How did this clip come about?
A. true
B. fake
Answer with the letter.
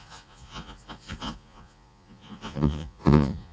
B